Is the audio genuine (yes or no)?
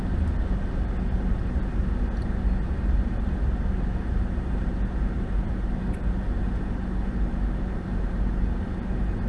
yes